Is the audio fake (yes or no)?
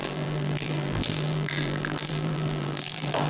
yes